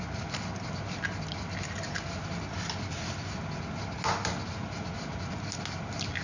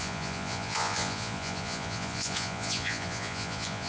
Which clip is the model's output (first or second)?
second